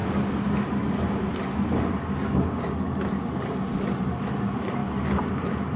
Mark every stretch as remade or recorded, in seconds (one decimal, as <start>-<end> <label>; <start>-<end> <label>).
0.0-4.8 recorded; 4.8-5.8 remade